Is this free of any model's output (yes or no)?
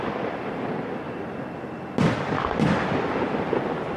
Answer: yes